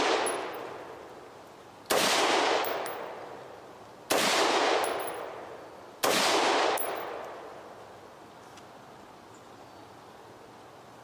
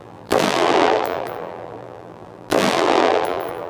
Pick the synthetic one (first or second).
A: second